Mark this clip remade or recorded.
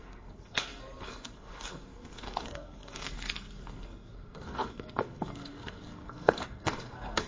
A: remade